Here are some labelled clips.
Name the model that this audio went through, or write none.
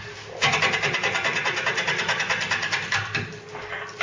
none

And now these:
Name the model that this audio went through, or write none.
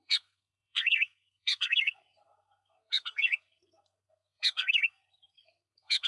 codec, SNAC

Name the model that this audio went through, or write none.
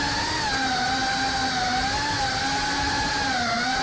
none